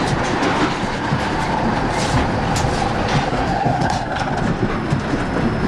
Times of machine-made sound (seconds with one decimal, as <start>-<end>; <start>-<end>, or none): 3.3-4.3